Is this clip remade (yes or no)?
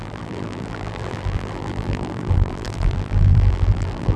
yes